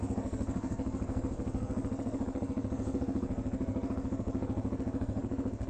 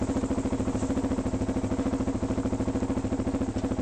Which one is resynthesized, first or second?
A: first